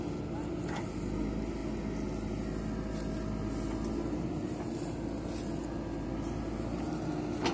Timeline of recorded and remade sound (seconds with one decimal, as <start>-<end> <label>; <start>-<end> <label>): 0.0-7.5 recorded